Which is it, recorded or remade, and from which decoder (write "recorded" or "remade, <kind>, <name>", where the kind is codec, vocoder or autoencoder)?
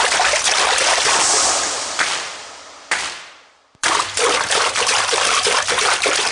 remade, vocoder, BigVGAN v2